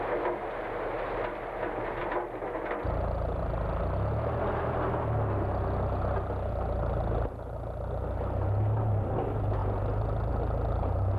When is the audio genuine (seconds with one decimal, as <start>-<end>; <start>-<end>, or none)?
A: 0.0-11.2